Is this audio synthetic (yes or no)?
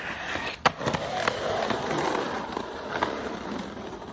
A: no